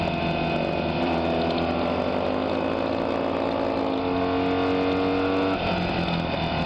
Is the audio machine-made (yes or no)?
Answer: no